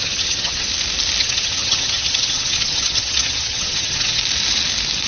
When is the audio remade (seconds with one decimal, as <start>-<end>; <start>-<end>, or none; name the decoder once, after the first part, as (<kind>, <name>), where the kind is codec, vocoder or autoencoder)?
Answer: 0.0-0.7 (vocoder, HiFi-GAN); 1.2-4.2